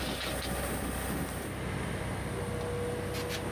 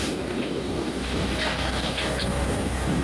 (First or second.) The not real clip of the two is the second